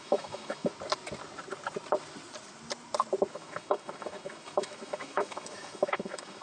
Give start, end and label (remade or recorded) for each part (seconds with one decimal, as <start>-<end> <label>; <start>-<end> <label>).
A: 0.0-0.7 remade; 0.7-3.3 recorded; 3.3-6.4 remade

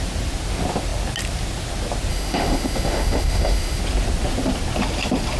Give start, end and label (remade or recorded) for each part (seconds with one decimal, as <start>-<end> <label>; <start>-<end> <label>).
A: 0.0-2.1 recorded; 2.1-3.8 remade; 3.8-5.4 recorded

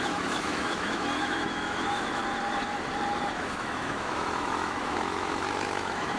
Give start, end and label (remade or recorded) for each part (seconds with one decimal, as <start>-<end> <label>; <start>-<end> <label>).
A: 0.0-2.2 remade; 2.2-3.1 recorded; 3.1-6.2 remade